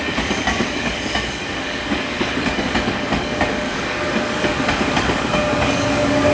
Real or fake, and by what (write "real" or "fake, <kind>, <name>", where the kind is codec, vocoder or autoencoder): fake, codec, DAC